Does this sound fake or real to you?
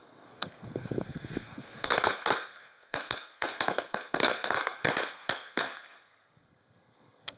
fake